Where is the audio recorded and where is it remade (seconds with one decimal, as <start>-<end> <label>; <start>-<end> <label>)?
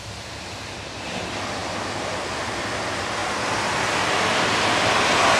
0.0-5.4 recorded